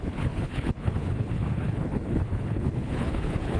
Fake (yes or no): yes